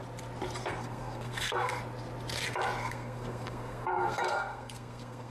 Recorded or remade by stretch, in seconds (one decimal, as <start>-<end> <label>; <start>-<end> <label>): 0.0-0.6 recorded; 0.6-1.8 remade; 1.8-2.8 recorded; 2.8-5.3 remade